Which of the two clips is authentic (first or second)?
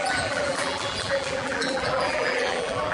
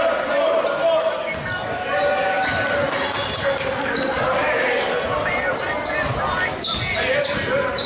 second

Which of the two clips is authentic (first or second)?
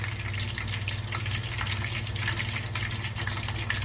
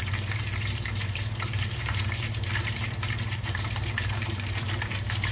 first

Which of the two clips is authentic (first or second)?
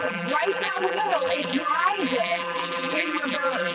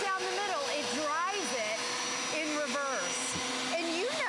second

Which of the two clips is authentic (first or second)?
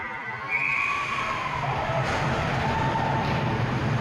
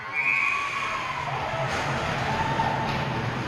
second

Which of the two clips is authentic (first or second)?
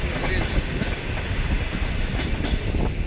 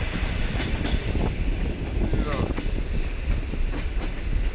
first